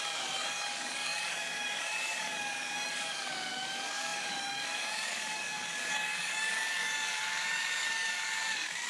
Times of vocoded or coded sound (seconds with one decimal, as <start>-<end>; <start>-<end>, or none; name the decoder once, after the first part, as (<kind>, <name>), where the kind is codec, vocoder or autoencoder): 0.0-8.9 (codec, DAC)